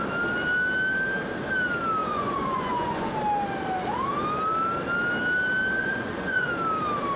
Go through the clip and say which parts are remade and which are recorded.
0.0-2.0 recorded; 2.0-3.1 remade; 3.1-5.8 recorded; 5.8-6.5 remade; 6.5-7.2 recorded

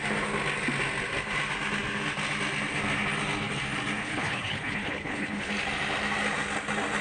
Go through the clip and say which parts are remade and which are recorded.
0.0-4.0 recorded; 4.0-5.5 remade; 5.5-7.0 recorded

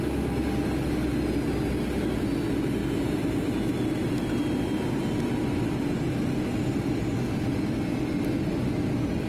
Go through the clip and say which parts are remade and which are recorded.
0.0-9.3 recorded